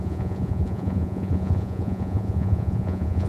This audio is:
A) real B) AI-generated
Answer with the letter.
B